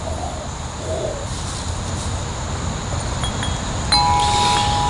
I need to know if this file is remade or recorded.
recorded